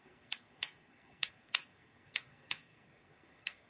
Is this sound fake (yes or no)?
yes